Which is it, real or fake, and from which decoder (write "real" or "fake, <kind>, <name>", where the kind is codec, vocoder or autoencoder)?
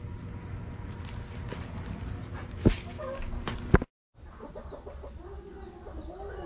real